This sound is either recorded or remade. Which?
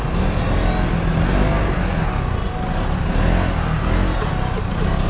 recorded